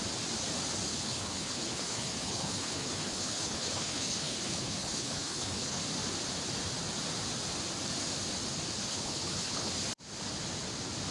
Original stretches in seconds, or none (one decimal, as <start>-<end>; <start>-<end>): 0.0-0.9; 5.8-8.9; 9.7-11.1